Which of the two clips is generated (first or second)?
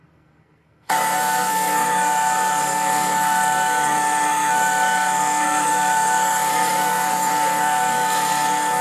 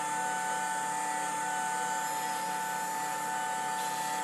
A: first